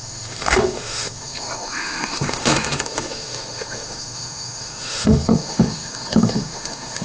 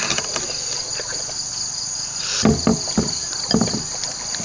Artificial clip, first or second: first